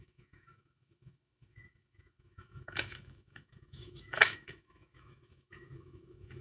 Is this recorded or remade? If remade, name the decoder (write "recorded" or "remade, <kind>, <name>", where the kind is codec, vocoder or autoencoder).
remade, autoencoder, DAC-VAE